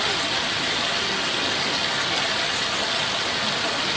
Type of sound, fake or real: real